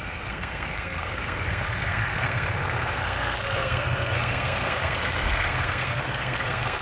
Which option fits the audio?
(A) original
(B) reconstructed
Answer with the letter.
B